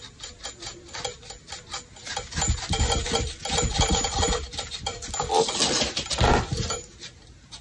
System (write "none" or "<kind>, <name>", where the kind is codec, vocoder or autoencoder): none